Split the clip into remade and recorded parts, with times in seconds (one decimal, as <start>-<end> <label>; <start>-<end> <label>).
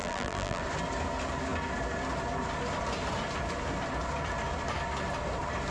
0.0-0.6 remade; 0.6-5.7 recorded